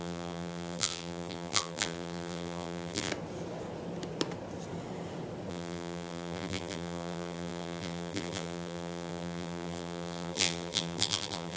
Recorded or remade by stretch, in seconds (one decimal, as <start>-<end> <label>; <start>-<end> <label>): 0.0-3.1 remade; 3.1-5.5 recorded; 5.5-11.6 remade